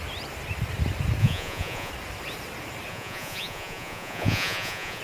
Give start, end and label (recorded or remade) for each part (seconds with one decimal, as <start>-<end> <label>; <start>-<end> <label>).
0.0-1.2 recorded; 1.2-1.9 remade; 1.9-2.9 recorded; 2.9-5.0 remade